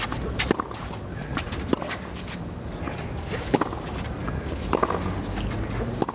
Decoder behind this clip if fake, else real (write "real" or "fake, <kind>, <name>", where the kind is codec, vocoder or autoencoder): real